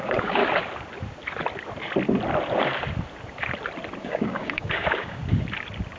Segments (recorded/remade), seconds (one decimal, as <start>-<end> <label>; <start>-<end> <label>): 0.0-0.4 remade; 0.4-4.0 recorded; 4.0-5.2 remade; 5.2-6.0 recorded